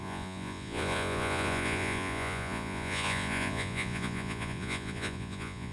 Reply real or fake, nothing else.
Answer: fake